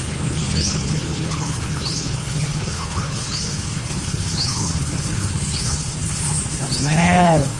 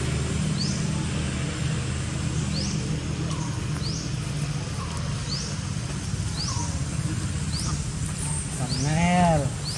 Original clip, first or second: second